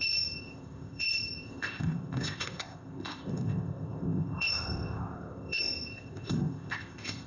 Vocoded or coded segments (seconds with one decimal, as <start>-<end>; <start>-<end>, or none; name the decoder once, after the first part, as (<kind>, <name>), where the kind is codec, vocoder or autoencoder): 0.0-7.3 (codec, ZipCodec)